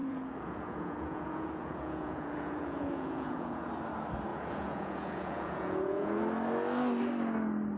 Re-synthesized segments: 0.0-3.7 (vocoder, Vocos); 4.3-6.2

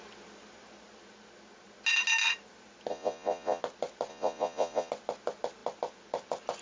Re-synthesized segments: 2.9-3.6 (vocoder, Vocos); 4.1-4.9

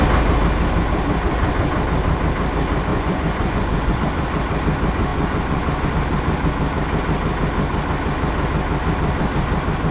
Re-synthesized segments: 2.9-4.0 (vocoder, Vocos); 5.1-5.9

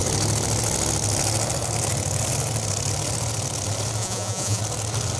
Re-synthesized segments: 4.0-4.6 (vocoder, Vocos)

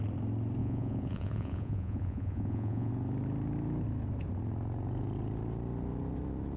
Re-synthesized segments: 0.6-2.9 (vocoder, Vocos)